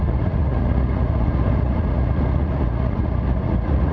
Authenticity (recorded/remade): remade